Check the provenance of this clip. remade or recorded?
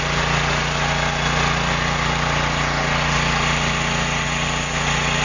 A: recorded